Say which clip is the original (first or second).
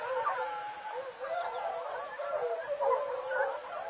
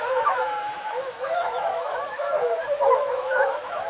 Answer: first